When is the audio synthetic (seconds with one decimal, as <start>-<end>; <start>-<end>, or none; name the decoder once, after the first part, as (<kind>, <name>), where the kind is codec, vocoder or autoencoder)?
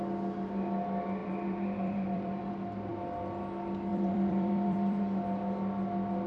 1.2-2.5 (vocoder, BigVGAN v2); 3.9-5.0